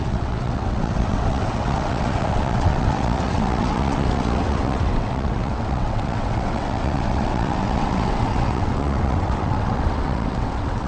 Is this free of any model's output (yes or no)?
no